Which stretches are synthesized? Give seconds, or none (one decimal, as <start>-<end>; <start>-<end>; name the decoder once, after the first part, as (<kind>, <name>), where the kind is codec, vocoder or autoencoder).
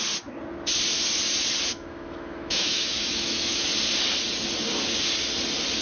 1.7-3.6 (autoencoder, DAC-VAE)